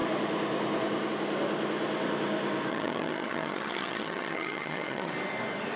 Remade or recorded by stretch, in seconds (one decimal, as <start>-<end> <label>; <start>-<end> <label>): 0.0-2.7 recorded; 2.7-5.1 remade; 5.1-5.8 recorded